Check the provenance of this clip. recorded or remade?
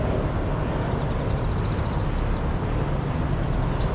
recorded